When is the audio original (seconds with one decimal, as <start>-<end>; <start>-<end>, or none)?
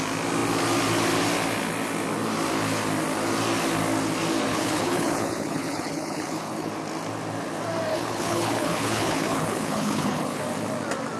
0.0-4.5; 6.7-7.9; 10.4-11.2